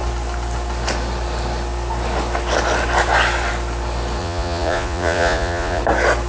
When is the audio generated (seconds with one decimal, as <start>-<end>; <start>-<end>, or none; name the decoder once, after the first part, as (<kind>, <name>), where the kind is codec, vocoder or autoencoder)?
4.2-5.8 (vocoder, Vocos)